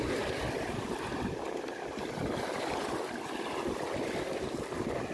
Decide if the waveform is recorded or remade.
recorded